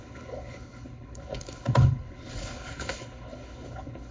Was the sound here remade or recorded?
remade